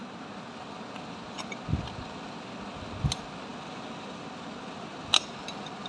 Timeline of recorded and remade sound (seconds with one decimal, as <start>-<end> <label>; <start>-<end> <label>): 0.0-3.5 recorded; 3.5-5.3 remade; 5.3-5.9 recorded